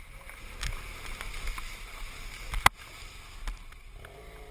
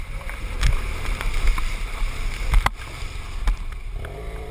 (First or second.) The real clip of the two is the first